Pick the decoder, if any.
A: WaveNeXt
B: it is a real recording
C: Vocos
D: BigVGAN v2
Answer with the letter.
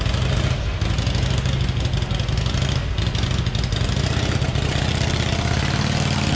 B